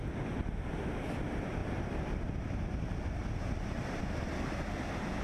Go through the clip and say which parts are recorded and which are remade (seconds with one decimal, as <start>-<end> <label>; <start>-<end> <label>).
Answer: 0.0-5.2 recorded